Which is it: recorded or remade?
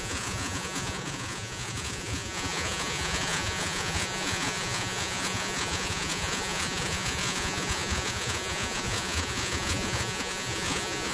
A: remade